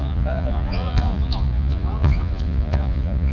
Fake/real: fake